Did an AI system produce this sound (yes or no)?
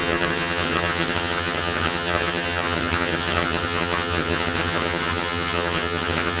yes